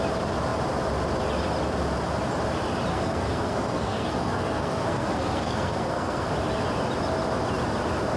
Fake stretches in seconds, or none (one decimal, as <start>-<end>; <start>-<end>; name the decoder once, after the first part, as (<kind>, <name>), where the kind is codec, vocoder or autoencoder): 2.9-6.3 (codec, SNAC)